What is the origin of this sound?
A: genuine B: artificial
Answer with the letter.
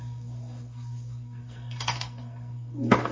B